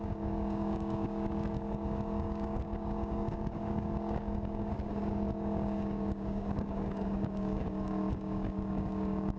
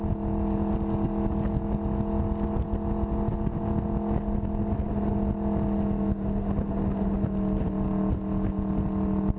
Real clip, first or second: second